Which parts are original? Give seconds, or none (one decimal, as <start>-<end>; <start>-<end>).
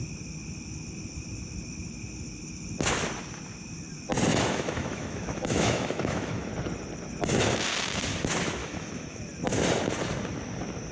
0.0-4.3; 6.5-8.6; 9.2-10.9